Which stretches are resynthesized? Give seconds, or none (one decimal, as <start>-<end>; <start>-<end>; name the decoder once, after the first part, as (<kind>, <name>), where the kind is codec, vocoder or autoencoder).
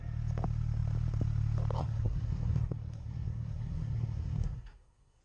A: 1.8-5.2 (codec, SNAC)